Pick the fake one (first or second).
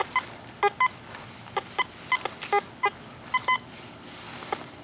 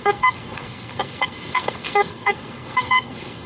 second